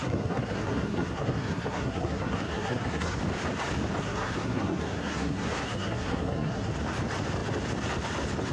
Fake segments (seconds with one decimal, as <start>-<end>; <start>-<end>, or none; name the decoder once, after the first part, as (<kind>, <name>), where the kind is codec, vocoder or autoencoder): 0.0-3.2 (codec, SNAC); 4.0-6.7